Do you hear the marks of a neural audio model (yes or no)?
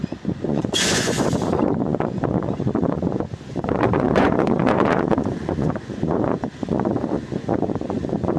yes